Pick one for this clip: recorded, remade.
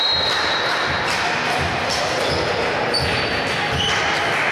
recorded